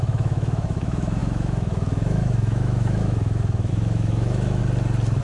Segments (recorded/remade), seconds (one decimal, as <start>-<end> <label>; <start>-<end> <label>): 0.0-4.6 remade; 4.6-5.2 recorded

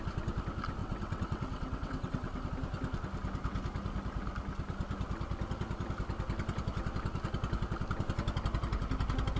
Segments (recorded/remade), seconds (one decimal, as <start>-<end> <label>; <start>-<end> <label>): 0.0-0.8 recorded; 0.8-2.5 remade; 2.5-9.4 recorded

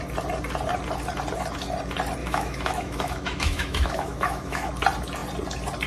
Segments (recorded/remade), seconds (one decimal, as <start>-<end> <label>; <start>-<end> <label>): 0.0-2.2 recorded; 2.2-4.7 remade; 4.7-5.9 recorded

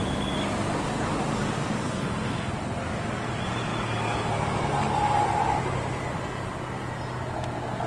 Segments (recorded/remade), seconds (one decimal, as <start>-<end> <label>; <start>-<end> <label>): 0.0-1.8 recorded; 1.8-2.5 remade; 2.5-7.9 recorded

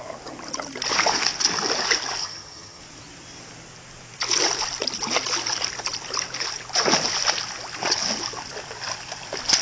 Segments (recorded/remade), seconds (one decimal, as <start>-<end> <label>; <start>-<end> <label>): 0.0-2.2 recorded; 2.2-2.8 remade; 2.8-9.6 recorded

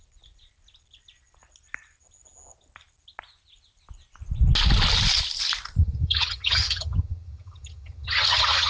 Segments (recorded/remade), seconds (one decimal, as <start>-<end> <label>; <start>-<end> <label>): 0.0-5.8 recorded; 5.8-8.7 remade

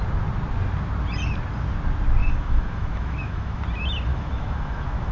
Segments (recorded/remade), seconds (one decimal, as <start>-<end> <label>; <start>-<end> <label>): 0.0-2.2 recorded; 2.2-3.6 remade; 3.6-4.1 recorded; 4.1-5.1 remade

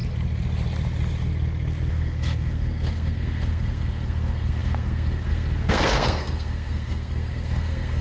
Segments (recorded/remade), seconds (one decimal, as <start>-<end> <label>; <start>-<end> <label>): 0.0-1.9 recorded; 1.9-8.0 remade